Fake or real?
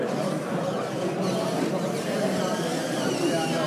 real